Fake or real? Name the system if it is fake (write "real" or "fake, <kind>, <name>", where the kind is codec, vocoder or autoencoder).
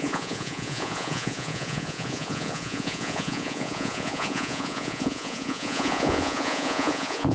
fake, vocoder, Vocos